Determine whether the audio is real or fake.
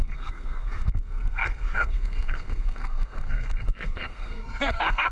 fake